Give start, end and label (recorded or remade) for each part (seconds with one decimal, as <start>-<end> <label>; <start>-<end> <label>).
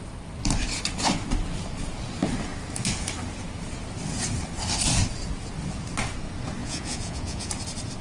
0.0-6.6 recorded; 6.6-7.5 remade; 7.5-8.0 recorded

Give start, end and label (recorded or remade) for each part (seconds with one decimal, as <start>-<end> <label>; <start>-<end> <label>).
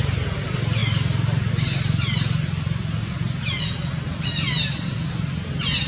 0.0-5.9 recorded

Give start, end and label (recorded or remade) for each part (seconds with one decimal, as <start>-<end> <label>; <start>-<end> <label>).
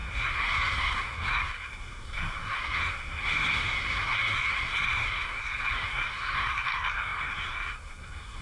0.0-8.4 remade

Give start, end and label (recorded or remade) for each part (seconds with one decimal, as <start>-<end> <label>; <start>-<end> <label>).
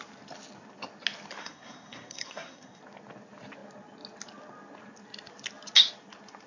0.0-1.4 recorded; 1.4-2.8 remade; 2.8-6.5 recorded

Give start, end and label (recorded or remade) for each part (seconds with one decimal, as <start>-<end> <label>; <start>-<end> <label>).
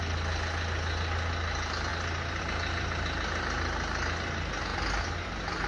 0.0-5.7 recorded